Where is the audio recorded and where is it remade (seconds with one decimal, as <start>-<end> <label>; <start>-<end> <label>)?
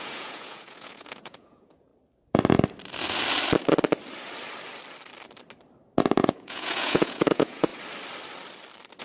0.0-1.9 remade; 1.9-6.2 recorded; 6.2-7.7 remade; 7.7-9.0 recorded